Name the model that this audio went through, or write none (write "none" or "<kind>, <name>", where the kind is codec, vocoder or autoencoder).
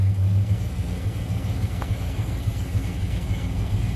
codec, SNAC